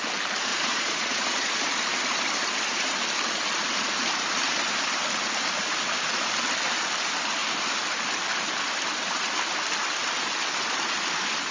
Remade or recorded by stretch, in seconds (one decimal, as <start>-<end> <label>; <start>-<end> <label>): 0.0-0.5 recorded; 0.5-1.6 remade; 1.6-11.5 recorded